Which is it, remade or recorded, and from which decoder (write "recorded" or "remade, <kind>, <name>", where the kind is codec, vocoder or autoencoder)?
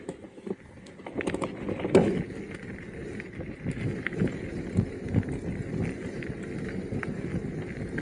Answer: recorded